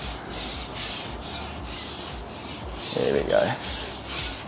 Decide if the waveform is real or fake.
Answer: real